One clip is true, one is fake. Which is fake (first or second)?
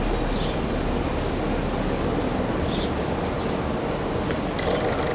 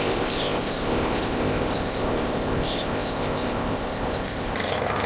second